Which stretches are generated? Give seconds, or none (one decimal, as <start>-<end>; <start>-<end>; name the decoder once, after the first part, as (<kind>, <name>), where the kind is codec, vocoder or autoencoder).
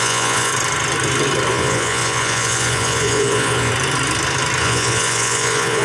0.0-0.5 (vocoder, Vocos); 1.5-3.7; 4.6-5.8